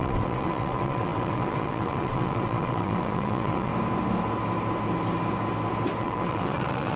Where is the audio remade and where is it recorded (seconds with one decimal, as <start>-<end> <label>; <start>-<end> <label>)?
0.0-3.7 remade; 3.7-6.0 recorded; 6.0-7.0 remade